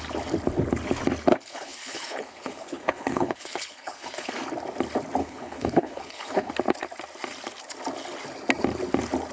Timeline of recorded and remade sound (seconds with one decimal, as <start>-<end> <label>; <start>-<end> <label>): 0.0-1.3 recorded; 1.3-4.3 remade; 4.3-5.2 recorded; 5.2-6.5 remade; 6.5-9.3 recorded